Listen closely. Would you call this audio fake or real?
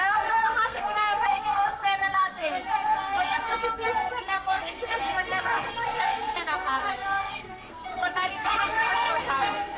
fake